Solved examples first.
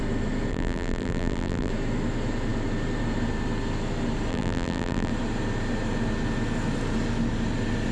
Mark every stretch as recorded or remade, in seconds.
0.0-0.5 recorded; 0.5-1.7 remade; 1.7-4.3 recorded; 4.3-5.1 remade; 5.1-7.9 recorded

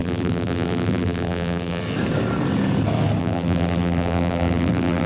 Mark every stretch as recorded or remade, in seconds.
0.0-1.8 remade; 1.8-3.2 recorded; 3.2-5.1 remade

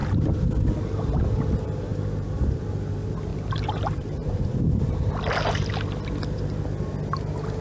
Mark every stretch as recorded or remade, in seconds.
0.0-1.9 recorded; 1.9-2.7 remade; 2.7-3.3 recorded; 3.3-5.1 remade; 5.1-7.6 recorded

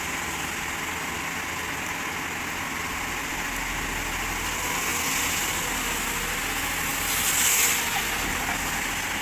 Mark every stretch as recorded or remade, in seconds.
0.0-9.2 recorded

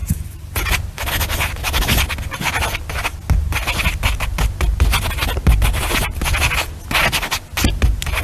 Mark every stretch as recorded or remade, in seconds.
0.0-1.1 remade; 1.1-8.2 recorded

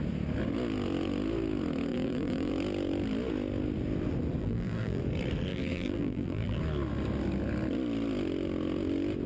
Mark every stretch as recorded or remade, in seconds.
0.0-1.9 recorded; 1.9-2.5 remade; 2.5-4.4 recorded; 4.4-5.0 remade; 5.0-5.5 recorded; 5.5-6.6 remade; 6.6-9.3 recorded

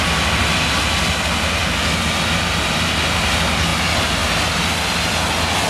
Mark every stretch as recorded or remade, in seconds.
0.0-5.7 recorded

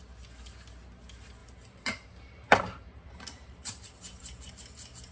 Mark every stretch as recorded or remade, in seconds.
0.0-1.4 recorded; 1.4-4.5 remade; 4.5-5.1 recorded